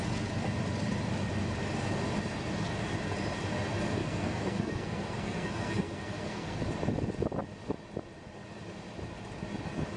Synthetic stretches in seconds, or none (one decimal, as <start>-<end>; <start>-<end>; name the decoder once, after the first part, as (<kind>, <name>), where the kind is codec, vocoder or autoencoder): 4.0-6.6 (codec, SNAC)